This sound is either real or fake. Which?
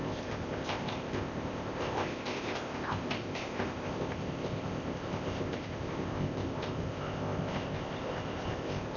fake